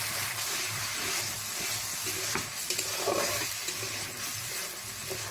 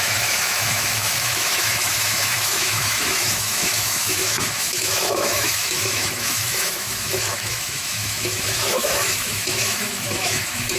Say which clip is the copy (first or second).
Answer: second